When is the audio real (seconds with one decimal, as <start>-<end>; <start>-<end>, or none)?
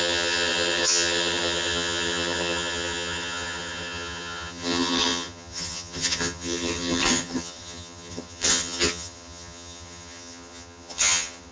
none